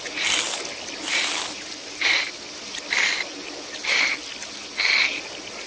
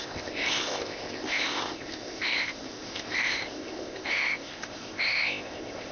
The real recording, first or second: first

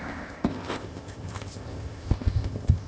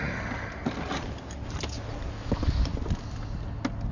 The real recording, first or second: second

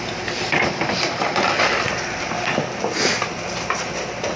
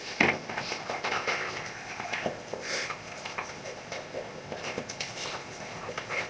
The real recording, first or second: first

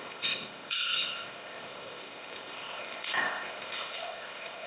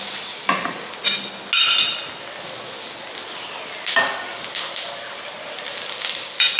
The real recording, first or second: second